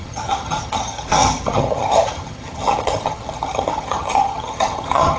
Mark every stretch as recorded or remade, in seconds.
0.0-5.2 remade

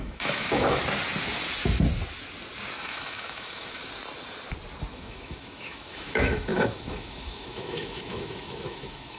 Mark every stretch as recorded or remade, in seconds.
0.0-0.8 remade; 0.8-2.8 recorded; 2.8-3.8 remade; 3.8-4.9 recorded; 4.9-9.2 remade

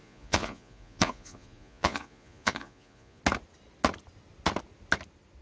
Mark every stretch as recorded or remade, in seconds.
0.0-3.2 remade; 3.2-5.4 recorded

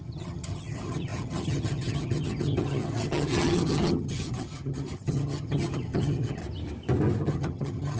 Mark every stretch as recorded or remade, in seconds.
0.0-6.4 remade; 6.4-7.3 recorded; 7.3-8.0 remade

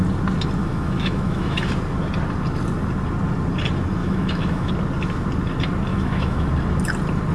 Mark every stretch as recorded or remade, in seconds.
0.0-0.6 recorded; 0.6-1.7 remade; 1.7-4.0 recorded; 4.0-4.7 remade; 4.7-5.9 recorded; 5.9-6.5 remade; 6.5-7.3 recorded